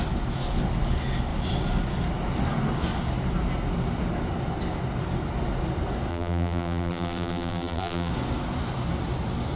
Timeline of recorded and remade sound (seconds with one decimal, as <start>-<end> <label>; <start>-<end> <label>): 0.0-6.1 recorded; 6.1-8.1 remade; 8.1-9.6 recorded